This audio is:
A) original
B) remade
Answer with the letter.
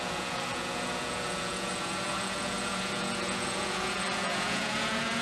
B